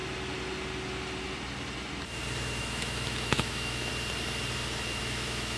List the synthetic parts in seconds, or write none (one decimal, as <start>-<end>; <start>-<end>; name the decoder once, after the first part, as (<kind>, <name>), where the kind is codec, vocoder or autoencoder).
2.6-3.9 (autoencoder, DAC-VAE); 5.0-5.6